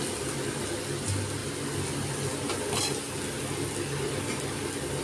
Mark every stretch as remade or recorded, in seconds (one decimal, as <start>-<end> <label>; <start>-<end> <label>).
0.0-5.0 recorded